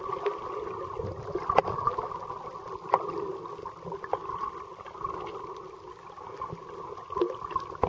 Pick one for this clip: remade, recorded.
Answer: recorded